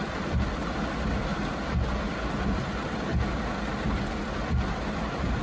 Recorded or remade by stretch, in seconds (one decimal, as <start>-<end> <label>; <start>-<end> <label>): 0.0-5.4 recorded